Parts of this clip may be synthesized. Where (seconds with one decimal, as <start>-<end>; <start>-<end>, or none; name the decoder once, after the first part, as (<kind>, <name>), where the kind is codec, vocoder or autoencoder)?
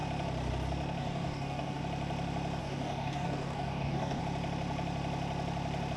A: 1.0-1.8 (codec, DAC); 2.6-4.2